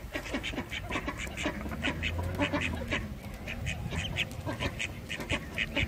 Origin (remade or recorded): recorded